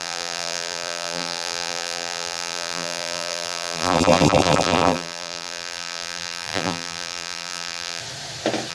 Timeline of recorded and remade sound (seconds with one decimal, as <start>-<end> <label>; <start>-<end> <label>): 0.0-8.0 remade; 8.0-8.7 recorded